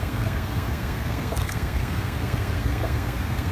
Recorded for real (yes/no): no